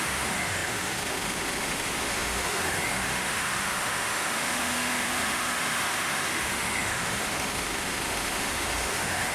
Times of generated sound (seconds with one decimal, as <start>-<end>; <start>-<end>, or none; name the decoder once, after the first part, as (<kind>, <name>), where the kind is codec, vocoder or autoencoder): 0.0-9.3 (autoencoder, DAC-VAE)